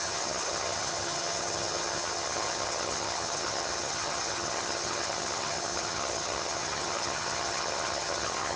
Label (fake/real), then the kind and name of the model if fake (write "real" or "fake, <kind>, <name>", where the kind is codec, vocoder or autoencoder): fake, vocoder, HiFi-GAN